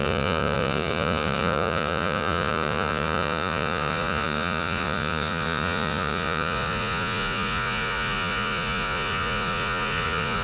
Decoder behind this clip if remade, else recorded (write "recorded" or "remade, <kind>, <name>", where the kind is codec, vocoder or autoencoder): remade, vocoder, Vocos